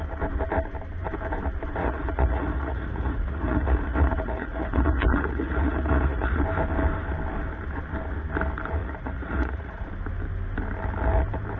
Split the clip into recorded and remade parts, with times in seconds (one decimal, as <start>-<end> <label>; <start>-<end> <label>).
0.0-1.8 recorded; 1.8-6.4 remade; 6.4-8.8 recorded; 8.8-9.9 remade; 9.9-11.6 recorded